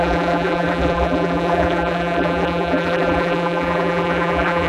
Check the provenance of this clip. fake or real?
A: fake